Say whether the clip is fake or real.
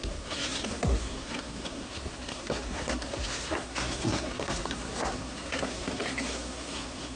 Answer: fake